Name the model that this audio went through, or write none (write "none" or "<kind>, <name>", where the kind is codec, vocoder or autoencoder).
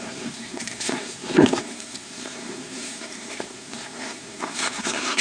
codec, SNAC